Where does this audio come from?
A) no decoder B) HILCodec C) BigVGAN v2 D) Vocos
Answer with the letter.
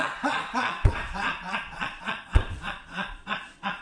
D